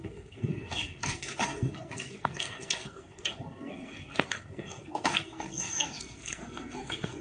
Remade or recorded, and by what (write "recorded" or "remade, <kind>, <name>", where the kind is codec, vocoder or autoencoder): remade, codec, SNAC